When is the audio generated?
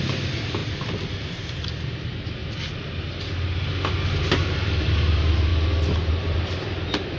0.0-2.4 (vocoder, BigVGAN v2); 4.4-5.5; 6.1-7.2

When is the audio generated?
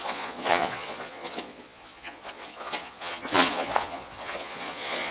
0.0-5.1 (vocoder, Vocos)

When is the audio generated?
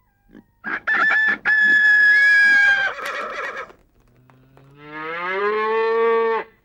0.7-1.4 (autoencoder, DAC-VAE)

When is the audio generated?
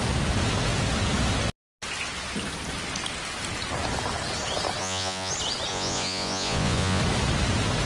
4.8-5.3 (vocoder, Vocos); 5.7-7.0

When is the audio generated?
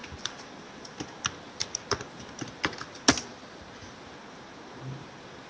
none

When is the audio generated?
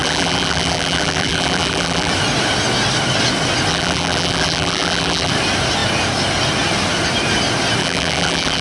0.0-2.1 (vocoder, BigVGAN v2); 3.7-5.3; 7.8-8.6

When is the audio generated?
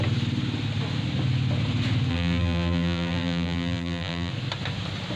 2.1-4.3 (vocoder, BigVGAN v2)